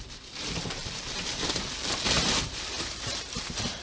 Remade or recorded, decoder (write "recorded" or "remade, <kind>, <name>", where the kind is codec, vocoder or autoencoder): remade, vocoder, BigVGAN v2